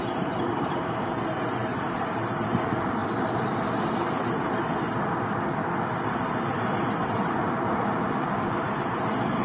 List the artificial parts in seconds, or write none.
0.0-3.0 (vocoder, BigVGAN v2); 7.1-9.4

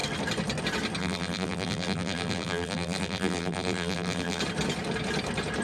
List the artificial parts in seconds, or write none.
1.0-4.4 (vocoder, BigVGAN v2)

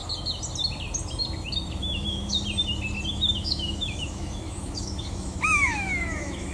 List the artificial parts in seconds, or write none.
1.8-2.3 (autoencoder, DAC-VAE); 3.1-6.5

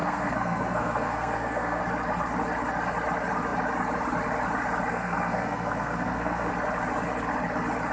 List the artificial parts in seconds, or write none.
0.0-1.8 (codec, SNAC); 4.9-6.5